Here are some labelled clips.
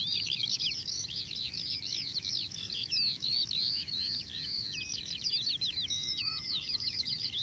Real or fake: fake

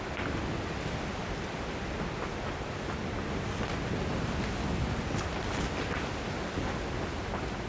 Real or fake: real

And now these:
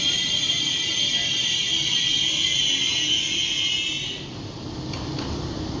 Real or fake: real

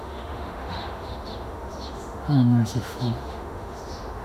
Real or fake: fake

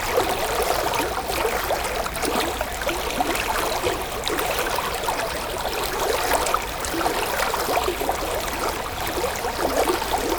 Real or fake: real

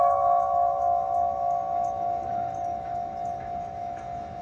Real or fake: fake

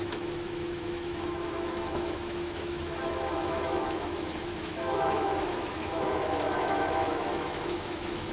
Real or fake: fake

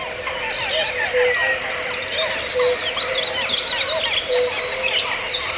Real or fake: real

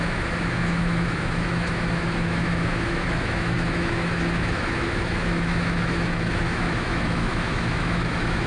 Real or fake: fake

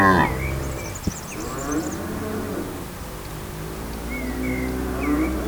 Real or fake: real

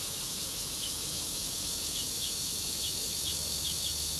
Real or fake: fake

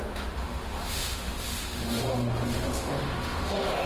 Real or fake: fake